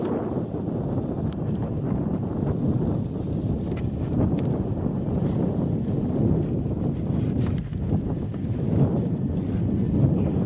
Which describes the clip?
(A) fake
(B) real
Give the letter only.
B